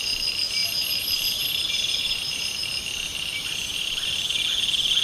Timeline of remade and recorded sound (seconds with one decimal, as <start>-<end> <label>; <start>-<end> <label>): 0.0-0.6 recorded; 0.6-2.7 remade; 2.7-3.3 recorded; 3.3-4.1 remade; 4.1-5.0 recorded